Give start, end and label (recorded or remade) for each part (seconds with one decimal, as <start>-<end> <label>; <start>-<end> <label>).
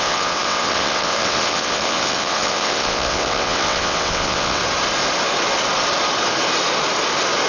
0.0-4.6 remade; 4.6-7.5 recorded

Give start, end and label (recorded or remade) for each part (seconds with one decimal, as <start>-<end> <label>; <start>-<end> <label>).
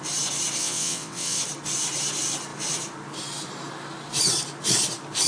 0.0-0.6 recorded; 0.6-1.4 remade; 1.4-5.3 recorded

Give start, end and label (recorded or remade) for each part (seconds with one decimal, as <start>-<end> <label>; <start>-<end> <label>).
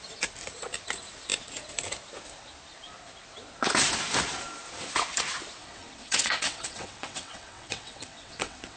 0.0-5.6 recorded; 5.6-8.8 remade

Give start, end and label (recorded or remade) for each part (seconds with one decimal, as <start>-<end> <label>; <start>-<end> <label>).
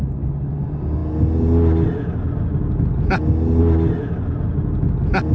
0.0-5.3 recorded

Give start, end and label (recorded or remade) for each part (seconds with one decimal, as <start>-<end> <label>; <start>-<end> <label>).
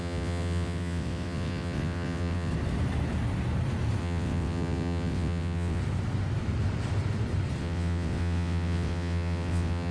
0.0-2.5 remade; 2.5-4.0 recorded; 4.0-5.8 remade; 5.8-7.6 recorded; 7.6-9.9 remade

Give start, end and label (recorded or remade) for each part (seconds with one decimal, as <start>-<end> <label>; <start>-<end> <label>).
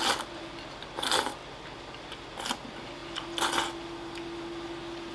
0.0-5.1 recorded